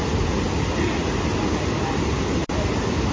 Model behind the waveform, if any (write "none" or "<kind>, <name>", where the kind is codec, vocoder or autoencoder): none